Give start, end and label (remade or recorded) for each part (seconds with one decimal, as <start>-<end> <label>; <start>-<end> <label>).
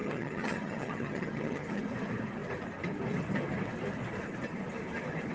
0.0-1.9 remade; 1.9-5.3 recorded